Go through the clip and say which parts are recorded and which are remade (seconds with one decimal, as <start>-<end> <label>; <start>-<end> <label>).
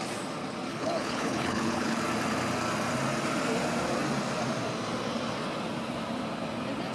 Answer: 0.0-0.7 recorded; 0.7-2.0 remade; 2.0-6.9 recorded